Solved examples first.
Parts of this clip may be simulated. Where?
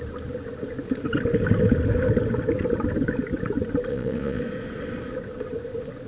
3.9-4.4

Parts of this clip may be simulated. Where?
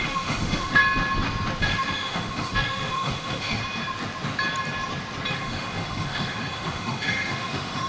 0.0-0.8; 1.6-3.6; 5.3-7.9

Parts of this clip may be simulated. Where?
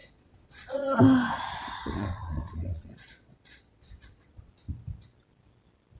0.0-1.0; 1.8-4.5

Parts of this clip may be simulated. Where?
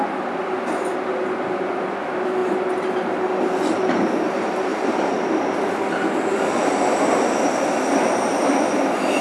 none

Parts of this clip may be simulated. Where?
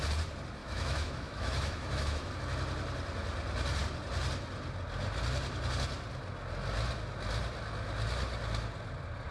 0.6-2.3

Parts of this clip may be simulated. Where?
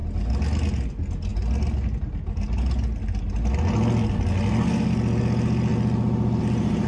none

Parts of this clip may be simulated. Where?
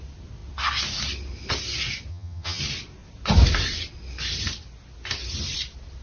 2.1-2.6